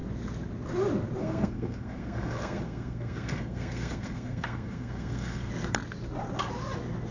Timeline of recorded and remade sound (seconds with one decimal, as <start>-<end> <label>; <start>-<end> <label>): 0.0-1.2 recorded; 1.2-5.5 remade; 5.5-7.1 recorded